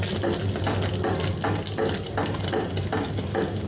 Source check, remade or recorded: recorded